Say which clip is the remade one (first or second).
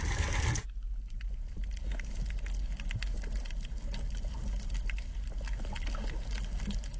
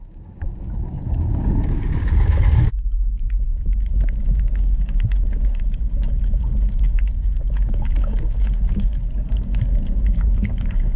second